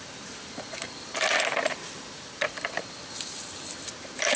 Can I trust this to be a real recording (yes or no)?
yes